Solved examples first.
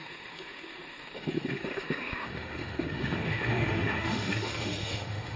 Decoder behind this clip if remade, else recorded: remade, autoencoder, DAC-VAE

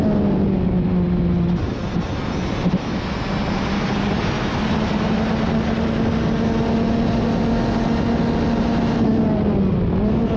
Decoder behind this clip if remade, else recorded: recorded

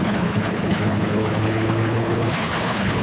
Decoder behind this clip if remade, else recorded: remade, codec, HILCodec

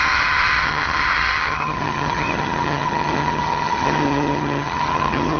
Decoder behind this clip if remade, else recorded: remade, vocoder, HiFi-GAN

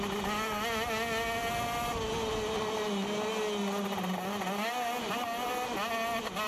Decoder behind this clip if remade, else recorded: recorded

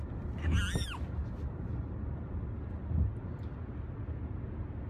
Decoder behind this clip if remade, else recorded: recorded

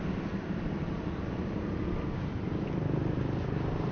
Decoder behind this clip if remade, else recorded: recorded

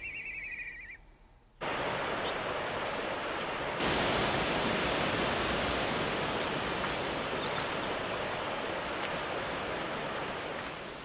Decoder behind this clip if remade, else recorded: recorded